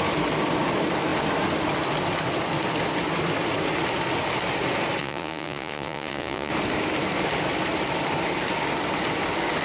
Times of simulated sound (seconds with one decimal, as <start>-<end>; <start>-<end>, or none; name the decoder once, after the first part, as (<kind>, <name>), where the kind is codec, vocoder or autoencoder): 5.0-6.5 (vocoder, Vocos)